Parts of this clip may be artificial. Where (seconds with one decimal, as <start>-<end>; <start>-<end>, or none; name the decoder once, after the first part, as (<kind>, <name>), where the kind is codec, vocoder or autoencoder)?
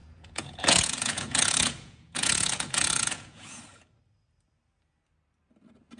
0.0-3.6 (vocoder, Vocos)